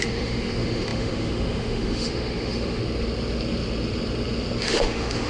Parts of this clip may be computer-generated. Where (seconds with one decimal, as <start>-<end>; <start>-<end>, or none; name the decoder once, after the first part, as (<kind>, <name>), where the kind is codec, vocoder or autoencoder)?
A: 0.0-2.8 (autoencoder, DAC-VAE); 4.6-5.3